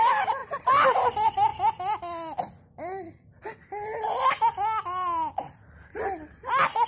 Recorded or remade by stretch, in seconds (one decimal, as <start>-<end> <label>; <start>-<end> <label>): 0.0-6.9 recorded